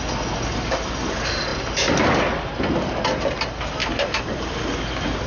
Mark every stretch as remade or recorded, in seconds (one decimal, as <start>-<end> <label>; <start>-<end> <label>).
0.0-3.8 recorded; 3.8-4.5 remade; 4.5-5.3 recorded